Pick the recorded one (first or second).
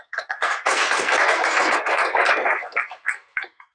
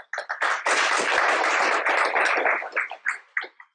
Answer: second